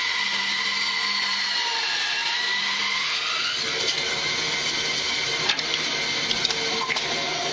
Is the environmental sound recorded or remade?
recorded